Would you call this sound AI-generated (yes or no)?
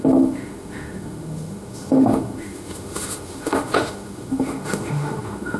yes